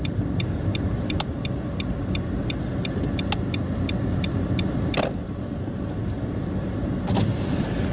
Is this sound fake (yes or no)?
no